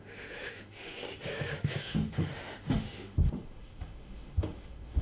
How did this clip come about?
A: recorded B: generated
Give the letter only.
B